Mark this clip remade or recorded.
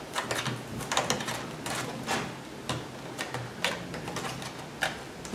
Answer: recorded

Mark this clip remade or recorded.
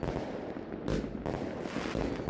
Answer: recorded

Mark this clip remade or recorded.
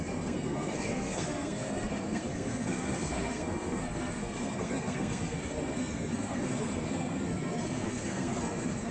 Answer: remade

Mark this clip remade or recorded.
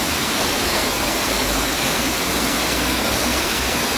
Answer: remade